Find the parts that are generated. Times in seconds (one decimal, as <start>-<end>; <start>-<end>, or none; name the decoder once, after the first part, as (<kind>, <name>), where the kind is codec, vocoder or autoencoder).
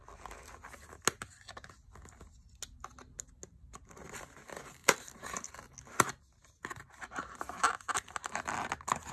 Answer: 4.8-5.5 (vocoder, BigVGAN v2)